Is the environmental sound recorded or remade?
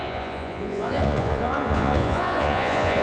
remade